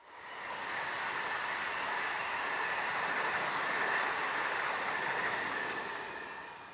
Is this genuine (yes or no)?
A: yes